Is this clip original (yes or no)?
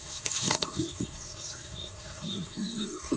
no